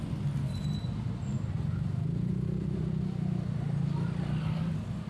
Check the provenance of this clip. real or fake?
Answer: real